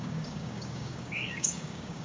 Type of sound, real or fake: fake